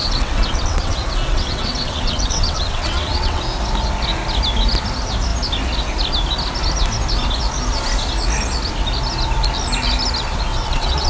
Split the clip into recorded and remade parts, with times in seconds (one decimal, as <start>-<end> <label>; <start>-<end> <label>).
0.0-3.4 remade; 3.4-10.5 recorded; 10.5-11.1 remade